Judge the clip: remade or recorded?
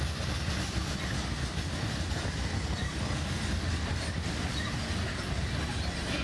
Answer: recorded